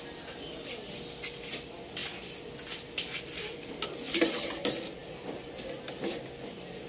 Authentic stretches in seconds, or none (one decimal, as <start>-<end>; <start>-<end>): 0.0-6.9